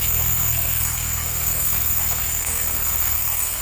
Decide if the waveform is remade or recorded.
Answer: remade